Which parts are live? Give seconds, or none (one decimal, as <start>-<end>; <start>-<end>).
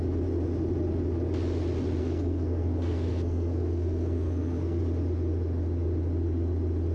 0.0-2.0; 4.8-6.9